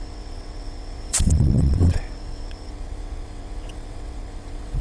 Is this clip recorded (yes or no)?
no